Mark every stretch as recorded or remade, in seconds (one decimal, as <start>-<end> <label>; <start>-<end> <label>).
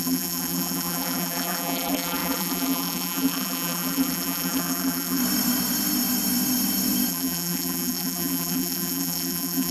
0.0-5.2 remade; 5.2-7.1 recorded; 7.1-9.7 remade